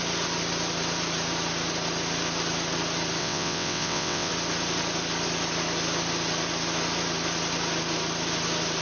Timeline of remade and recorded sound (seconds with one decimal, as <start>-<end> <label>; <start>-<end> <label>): 0.0-3.2 recorded; 3.2-4.3 remade; 4.3-8.8 recorded

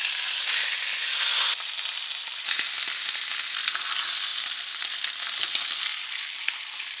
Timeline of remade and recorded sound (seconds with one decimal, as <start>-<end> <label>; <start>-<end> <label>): 0.0-7.0 recorded